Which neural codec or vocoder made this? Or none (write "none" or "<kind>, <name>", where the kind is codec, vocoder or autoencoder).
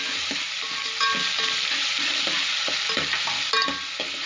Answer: none